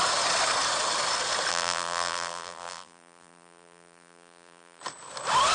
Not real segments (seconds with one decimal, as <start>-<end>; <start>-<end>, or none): 1.5-4.8

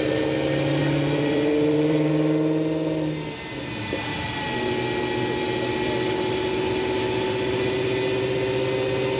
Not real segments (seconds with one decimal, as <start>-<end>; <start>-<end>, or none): 0.8-2.1

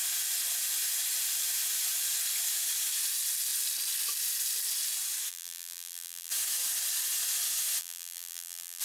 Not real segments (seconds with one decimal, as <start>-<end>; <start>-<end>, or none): 5.3-6.3; 7.8-8.8

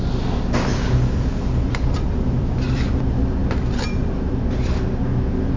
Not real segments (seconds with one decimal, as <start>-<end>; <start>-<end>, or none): 0.7-2.9; 3.4-4.1

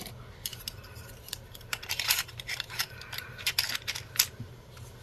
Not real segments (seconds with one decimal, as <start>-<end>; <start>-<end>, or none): 0.5-3.5

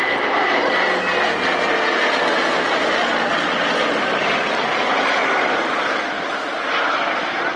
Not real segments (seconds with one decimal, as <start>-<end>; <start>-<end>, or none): none